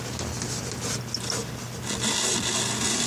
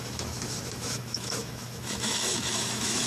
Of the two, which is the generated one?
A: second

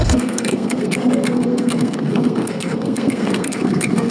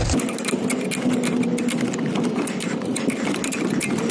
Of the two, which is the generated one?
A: first